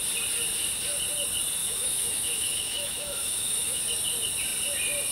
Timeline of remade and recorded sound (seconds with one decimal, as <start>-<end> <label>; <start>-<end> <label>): 0.0-1.6 recorded; 1.6-3.8 remade; 3.8-5.1 recorded